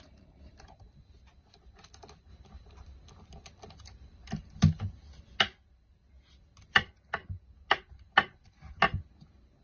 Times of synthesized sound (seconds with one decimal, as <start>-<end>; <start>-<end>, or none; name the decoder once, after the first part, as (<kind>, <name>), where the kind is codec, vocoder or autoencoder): none